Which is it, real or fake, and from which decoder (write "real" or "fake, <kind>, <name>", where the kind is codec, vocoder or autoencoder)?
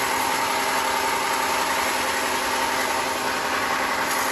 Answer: real